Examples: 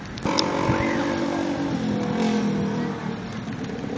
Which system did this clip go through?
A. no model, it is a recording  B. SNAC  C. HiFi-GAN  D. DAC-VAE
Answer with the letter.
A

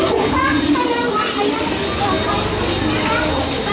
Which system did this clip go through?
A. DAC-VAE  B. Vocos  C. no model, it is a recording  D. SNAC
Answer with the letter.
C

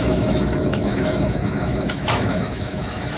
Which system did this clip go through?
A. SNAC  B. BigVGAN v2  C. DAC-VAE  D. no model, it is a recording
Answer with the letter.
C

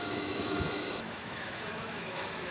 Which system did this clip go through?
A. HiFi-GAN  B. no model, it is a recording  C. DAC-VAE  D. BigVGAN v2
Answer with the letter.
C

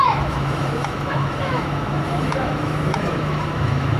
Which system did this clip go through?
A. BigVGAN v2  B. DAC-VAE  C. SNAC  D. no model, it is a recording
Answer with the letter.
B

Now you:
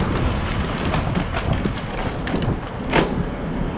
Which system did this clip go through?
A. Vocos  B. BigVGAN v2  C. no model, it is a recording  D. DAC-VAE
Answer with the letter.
C